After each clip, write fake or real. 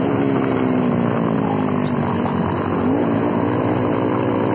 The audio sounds real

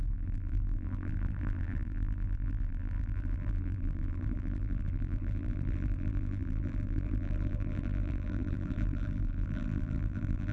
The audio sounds fake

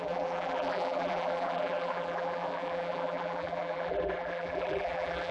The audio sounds fake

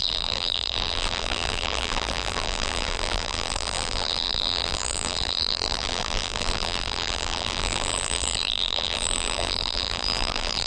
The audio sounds fake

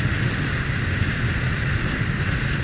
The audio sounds real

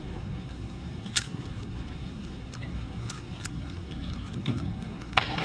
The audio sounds fake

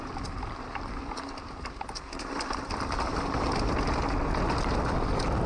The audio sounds real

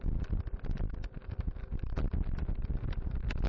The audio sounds real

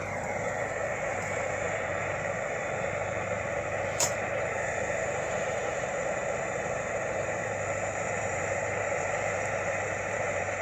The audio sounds fake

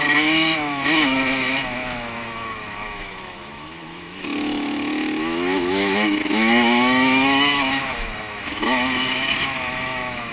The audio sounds fake